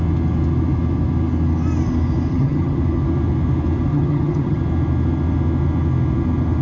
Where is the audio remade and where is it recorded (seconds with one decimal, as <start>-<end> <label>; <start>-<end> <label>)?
0.0-2.3 recorded; 2.3-2.8 remade; 2.8-3.9 recorded; 3.9-4.6 remade; 4.6-6.6 recorded